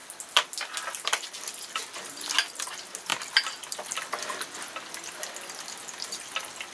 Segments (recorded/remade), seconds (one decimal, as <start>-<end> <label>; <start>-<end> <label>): 0.0-6.7 recorded